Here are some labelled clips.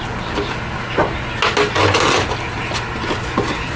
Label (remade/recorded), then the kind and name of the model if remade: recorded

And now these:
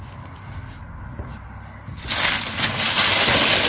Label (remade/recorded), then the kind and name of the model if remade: recorded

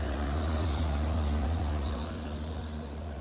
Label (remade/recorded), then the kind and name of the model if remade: remade, vocoder, Vocos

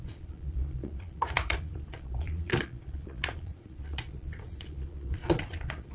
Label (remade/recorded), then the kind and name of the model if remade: remade, vocoder, Vocos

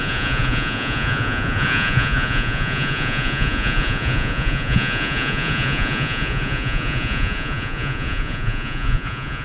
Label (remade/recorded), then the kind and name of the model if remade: remade, vocoder, Vocos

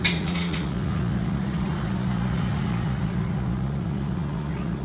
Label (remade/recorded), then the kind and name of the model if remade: remade, vocoder, Vocos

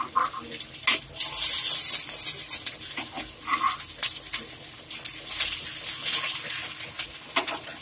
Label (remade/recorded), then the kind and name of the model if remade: recorded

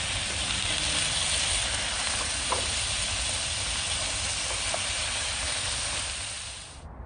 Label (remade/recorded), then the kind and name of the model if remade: recorded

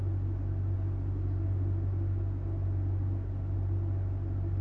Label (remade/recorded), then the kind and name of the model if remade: recorded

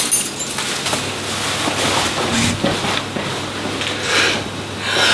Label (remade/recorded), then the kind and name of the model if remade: recorded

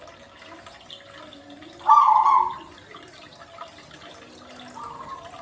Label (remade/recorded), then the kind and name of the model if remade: recorded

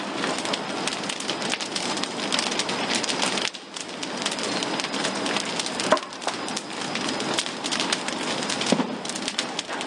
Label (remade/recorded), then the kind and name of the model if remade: recorded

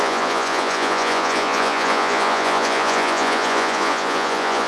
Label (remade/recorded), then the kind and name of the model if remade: remade, vocoder, Vocos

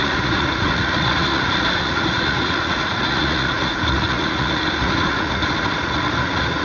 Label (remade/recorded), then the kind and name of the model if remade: remade, vocoder, Vocos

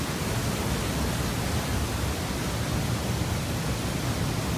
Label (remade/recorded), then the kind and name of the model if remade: recorded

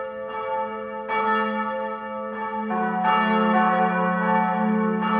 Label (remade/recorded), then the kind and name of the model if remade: recorded